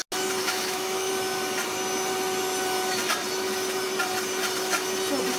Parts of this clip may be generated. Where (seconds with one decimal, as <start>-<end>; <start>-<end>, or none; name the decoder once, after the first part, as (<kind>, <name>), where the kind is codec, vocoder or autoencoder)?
0.4-1.1 (autoencoder, DAC-VAE)